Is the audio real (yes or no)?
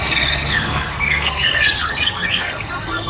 no